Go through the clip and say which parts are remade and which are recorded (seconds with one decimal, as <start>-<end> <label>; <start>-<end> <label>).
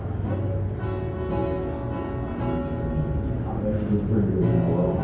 0.0-5.0 recorded